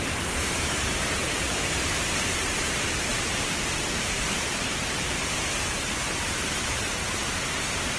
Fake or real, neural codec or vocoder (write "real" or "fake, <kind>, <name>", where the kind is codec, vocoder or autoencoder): fake, vocoder, BigVGAN v2